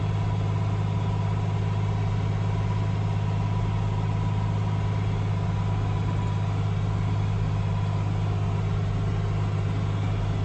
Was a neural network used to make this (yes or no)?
no